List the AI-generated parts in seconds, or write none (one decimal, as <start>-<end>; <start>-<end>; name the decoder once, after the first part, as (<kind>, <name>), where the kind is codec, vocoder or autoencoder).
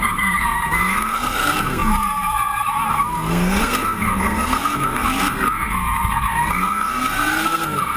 0.0-8.0 (codec, SNAC)